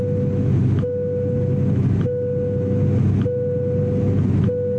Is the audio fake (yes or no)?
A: no